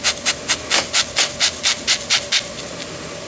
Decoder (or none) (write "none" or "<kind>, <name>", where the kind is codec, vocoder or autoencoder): none